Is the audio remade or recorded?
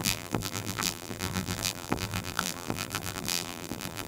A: remade